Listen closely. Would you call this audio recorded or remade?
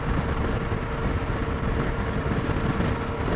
recorded